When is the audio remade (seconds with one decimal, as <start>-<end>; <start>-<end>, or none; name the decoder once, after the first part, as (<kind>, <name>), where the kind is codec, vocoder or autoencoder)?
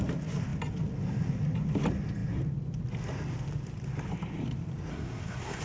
4.9-5.6 (codec, SNAC)